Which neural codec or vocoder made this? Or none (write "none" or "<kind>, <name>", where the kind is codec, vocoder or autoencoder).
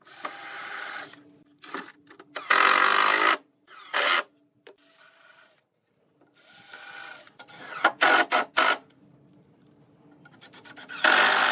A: none